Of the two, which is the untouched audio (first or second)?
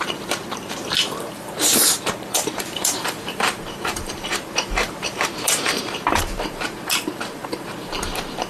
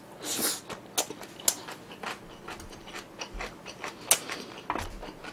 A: second